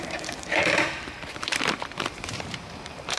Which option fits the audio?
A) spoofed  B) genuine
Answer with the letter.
A